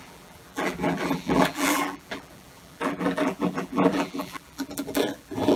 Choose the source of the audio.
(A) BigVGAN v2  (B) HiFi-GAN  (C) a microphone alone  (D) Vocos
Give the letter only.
A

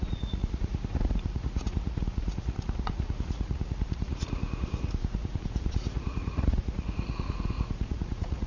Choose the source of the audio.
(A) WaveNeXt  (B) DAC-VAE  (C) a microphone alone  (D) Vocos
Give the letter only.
D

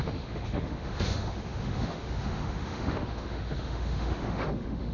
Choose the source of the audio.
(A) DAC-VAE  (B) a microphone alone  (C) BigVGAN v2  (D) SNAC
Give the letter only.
A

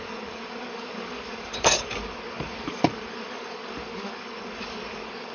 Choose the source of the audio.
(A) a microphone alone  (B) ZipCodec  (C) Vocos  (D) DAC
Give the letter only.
D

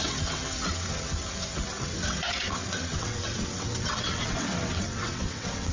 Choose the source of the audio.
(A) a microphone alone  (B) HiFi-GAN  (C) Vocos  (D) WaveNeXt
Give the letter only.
D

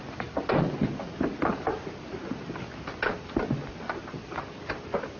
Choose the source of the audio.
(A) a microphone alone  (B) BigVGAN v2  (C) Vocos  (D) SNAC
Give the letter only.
A